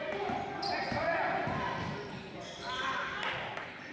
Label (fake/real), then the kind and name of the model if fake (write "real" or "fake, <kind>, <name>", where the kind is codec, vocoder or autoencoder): real